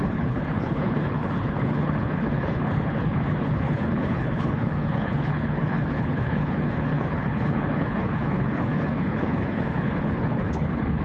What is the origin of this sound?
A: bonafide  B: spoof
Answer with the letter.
B